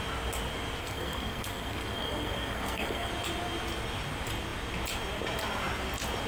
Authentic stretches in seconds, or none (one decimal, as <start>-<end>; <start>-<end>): 0.0-0.8; 3.1-6.3